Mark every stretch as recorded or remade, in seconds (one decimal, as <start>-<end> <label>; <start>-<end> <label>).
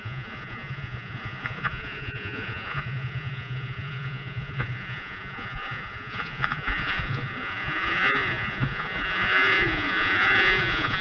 0.0-11.0 remade